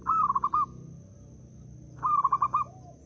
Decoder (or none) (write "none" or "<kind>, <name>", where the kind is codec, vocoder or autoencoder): none